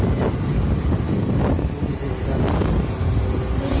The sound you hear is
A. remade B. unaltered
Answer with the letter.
B